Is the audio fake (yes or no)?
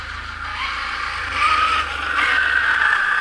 no